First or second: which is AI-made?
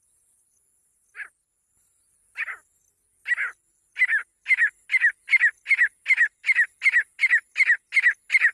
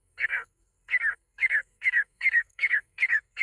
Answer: second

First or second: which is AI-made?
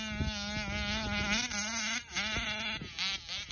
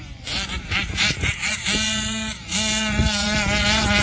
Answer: second